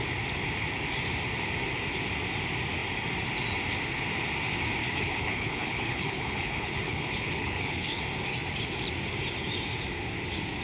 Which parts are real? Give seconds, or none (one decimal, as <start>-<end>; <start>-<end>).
0.0-4.8; 8.0-10.6